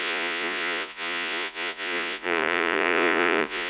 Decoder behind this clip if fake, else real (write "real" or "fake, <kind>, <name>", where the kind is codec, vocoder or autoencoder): fake, vocoder, Vocos